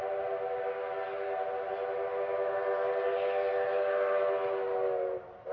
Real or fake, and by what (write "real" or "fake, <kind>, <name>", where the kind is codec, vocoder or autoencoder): real